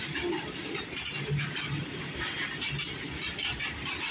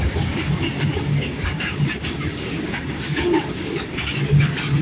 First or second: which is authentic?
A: first